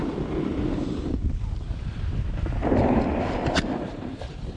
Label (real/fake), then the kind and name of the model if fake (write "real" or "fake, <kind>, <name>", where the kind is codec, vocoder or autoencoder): real